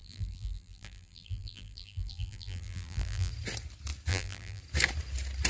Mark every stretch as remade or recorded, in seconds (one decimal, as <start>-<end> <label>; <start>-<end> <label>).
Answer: 0.0-3.3 remade; 3.3-4.1 recorded; 4.1-4.6 remade; 4.6-5.5 recorded